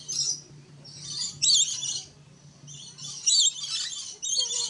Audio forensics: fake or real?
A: real